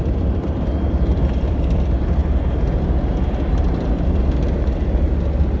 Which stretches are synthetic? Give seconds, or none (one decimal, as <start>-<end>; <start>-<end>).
0.0-2.2